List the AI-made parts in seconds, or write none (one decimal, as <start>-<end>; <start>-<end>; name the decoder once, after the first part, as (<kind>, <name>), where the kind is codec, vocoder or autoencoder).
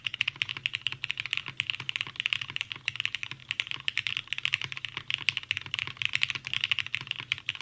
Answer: none